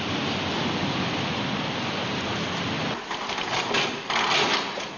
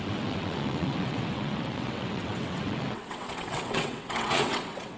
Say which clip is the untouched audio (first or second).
first